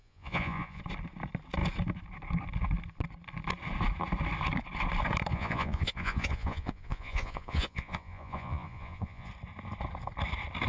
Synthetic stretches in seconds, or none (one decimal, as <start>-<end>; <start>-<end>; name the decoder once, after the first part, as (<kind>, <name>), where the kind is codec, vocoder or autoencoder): 0.0-0.8 (vocoder, Vocos); 5.3-9.3